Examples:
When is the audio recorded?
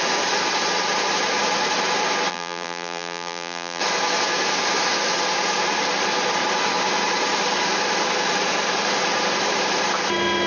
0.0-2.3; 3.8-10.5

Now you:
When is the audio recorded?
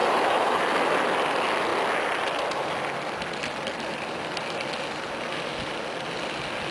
0.6-6.7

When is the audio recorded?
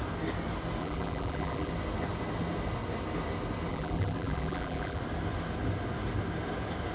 0.0-0.8; 1.7-3.7; 5.0-6.9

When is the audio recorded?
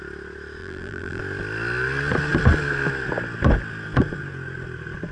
0.0-0.6; 1.2-5.1